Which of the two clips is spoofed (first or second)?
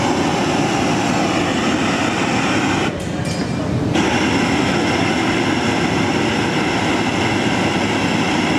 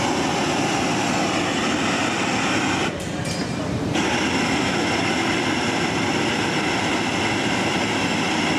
second